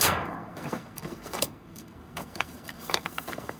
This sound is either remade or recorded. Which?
remade